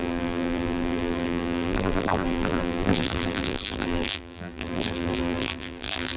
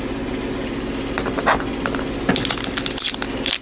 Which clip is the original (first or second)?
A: second